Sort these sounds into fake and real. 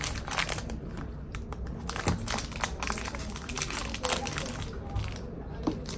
real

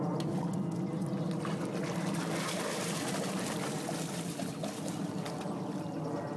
real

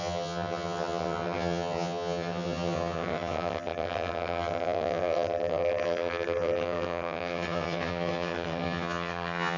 fake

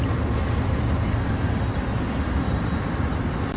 real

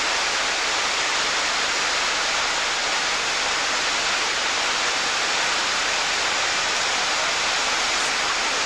real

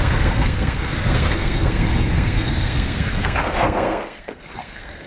fake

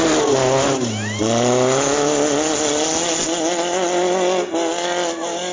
real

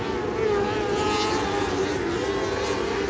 real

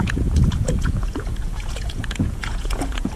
fake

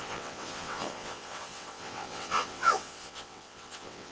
fake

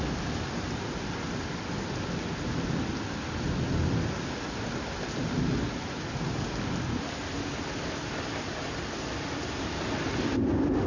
real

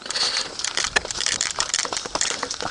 real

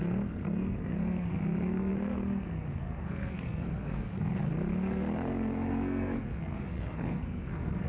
fake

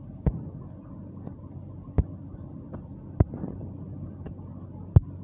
real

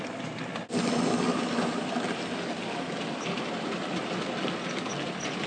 real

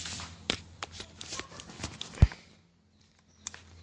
real